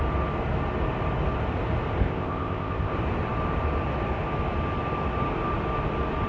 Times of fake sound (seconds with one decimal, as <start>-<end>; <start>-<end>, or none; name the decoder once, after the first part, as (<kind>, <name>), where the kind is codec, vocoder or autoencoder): 2.0-2.9 (codec, ZipCodec)